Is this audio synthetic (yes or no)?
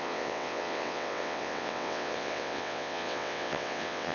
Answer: yes